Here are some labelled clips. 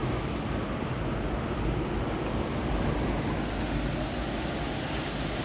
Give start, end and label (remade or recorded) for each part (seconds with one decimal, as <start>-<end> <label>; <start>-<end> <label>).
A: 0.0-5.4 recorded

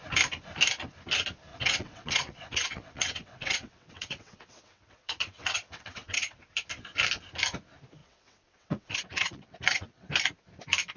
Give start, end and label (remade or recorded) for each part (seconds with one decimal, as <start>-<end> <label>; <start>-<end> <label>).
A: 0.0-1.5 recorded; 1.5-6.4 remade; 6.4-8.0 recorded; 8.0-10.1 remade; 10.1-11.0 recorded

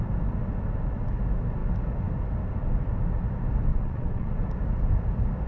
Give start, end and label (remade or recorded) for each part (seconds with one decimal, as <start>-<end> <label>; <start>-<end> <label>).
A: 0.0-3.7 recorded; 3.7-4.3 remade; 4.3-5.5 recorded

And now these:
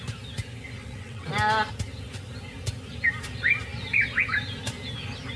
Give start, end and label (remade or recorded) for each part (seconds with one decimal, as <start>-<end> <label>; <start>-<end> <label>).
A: 0.0-0.8 recorded; 0.8-1.3 remade; 1.3-5.4 recorded

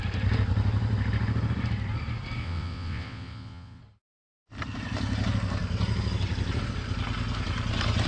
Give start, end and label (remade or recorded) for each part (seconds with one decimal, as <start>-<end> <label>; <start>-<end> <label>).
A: 0.0-2.4 recorded; 2.4-3.8 remade; 3.8-8.1 recorded

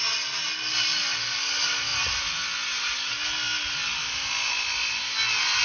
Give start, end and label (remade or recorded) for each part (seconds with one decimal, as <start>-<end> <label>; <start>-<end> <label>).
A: 0.0-5.6 recorded

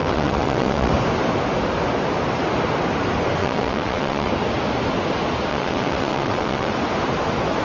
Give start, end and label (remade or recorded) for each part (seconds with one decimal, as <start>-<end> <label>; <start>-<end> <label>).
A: 0.0-0.9 remade; 0.9-3.4 recorded; 3.4-4.3 remade; 4.3-5.5 recorded; 5.5-6.7 remade; 6.7-7.6 recorded